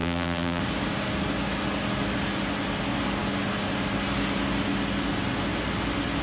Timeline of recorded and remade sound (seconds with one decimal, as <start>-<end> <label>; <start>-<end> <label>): 0.0-0.6 remade; 0.6-6.2 recorded